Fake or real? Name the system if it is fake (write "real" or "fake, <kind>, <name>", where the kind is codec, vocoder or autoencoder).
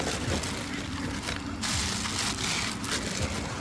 real